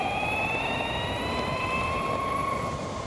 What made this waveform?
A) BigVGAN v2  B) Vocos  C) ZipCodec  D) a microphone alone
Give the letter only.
D